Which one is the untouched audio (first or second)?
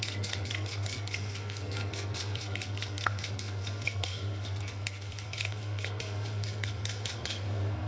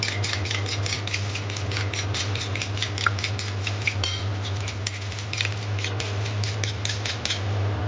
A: second